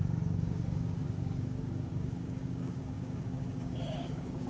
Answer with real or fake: fake